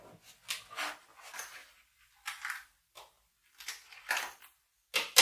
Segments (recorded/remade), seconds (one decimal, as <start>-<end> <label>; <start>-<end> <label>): 0.0-1.6 recorded; 1.6-4.7 remade; 4.7-5.2 recorded